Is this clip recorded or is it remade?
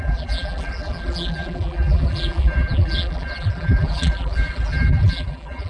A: remade